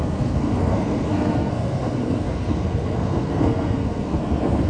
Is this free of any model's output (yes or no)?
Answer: no